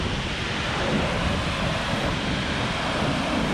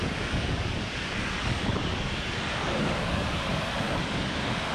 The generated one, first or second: second